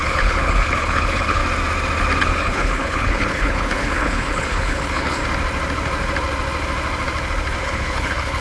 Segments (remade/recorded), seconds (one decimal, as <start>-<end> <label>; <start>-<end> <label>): 0.0-1.4 remade; 1.4-2.2 recorded; 2.2-5.2 remade; 5.2-7.6 recorded; 7.6-8.4 remade